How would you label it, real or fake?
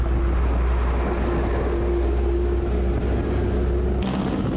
real